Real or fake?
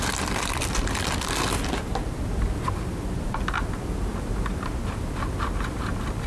real